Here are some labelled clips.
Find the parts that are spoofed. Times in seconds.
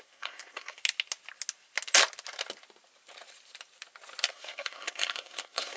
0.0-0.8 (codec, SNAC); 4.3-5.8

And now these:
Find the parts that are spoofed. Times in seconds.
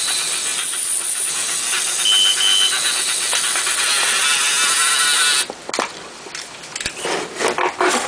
0.6-1.3 (vocoder, WaveNeXt)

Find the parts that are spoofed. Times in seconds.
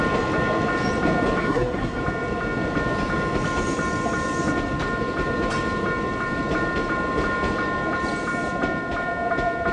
1.4-2.0 (codec, SNAC)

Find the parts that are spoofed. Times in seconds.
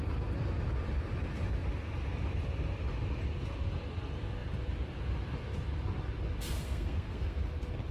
6.5-7.4 (codec, SNAC)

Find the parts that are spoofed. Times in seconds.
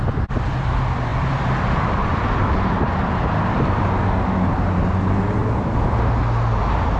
none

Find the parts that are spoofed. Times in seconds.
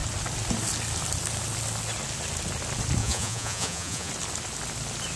3.0-4.1 (vocoder, Vocos)